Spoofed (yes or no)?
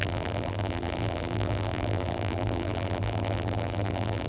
yes